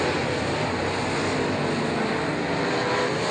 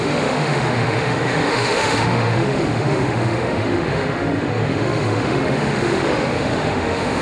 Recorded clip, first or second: first